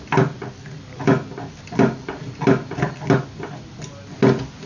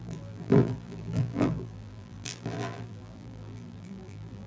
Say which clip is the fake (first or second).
second